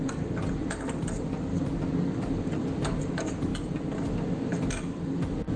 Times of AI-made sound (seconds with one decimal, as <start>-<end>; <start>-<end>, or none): none